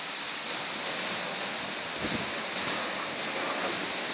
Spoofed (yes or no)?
no